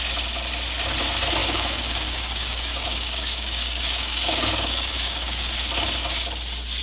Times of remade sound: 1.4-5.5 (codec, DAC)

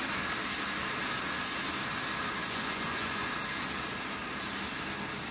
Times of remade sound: 2.4-3.3 (vocoder, Vocos)

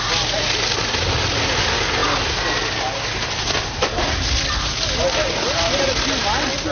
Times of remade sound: none

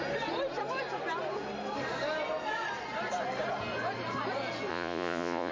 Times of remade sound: 4.7-5.5 (vocoder, Vocos)